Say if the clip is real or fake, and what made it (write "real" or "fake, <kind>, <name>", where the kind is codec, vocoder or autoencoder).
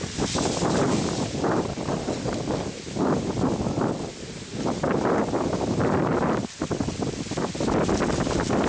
real